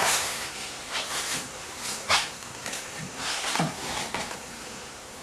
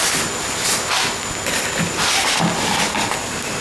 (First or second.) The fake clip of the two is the first